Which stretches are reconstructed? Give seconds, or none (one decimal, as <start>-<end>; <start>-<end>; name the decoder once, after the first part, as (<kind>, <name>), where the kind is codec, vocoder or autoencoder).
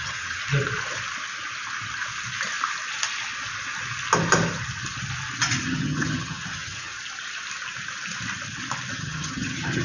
0.0-0.4 (vocoder, HiFi-GAN); 5.6-6.9; 8.9-9.8